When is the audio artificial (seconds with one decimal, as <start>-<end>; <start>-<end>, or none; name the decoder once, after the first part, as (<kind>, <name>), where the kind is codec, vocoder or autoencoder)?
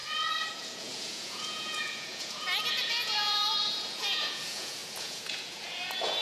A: 0.5-6.2 (vocoder, Vocos)